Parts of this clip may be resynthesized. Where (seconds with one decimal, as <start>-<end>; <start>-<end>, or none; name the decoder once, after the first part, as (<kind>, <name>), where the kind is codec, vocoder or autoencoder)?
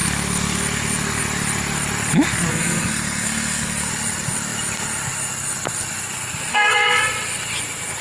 2.5-3.9 (codec, SNAC); 6.5-7.0